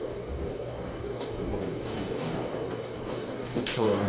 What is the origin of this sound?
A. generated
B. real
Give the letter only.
A